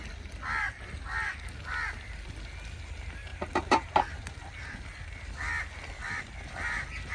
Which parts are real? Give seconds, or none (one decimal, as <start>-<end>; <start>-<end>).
0.0-7.1